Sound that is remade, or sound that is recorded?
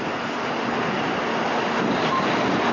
recorded